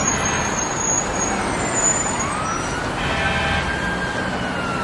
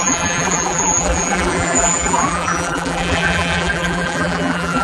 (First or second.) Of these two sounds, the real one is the first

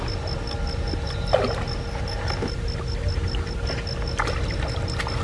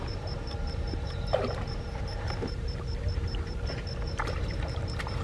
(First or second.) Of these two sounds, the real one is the first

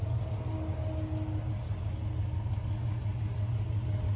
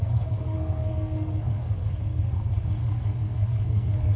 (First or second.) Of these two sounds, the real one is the first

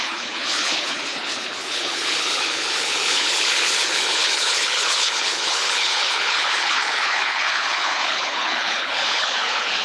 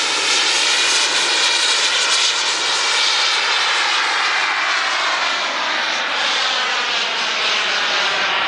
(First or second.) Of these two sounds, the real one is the second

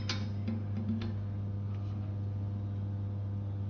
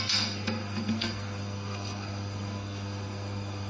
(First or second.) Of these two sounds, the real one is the first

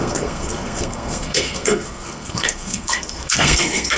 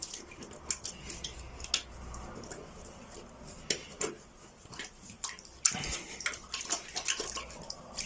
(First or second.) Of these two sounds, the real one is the second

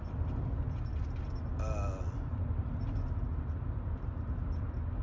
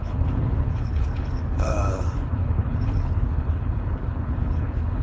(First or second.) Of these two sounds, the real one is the first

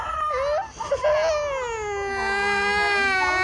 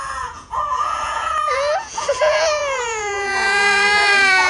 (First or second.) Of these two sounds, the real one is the first